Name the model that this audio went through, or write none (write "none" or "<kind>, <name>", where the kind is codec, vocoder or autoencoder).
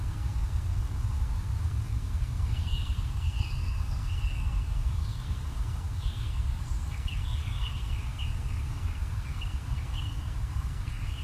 codec, SNAC